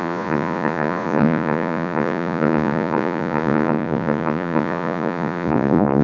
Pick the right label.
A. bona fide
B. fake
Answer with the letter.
B